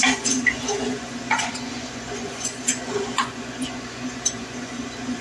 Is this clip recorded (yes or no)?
no